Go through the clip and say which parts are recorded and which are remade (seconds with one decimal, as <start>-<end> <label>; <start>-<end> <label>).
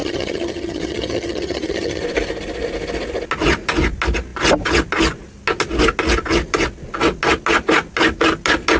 0.0-2.0 remade; 2.0-8.8 recorded